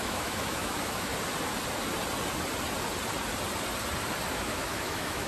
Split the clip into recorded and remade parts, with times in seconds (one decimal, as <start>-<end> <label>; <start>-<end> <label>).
0.0-1.1 remade; 1.1-4.3 recorded; 4.3-5.3 remade